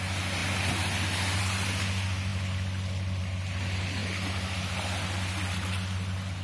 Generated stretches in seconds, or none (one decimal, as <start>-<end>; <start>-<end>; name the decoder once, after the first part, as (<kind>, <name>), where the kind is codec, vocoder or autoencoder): none